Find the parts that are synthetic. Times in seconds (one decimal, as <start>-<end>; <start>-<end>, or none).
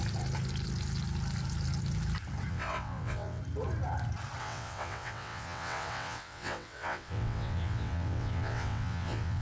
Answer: 2.5-3.4; 4.4-9.4